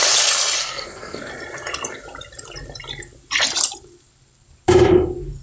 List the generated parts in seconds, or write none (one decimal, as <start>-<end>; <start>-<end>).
0.6-1.3